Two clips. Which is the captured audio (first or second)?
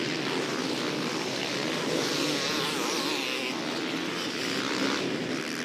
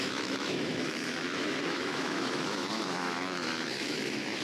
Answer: first